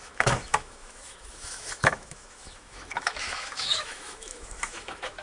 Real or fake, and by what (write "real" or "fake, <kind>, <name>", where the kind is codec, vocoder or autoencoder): fake, autoencoder, DAC-VAE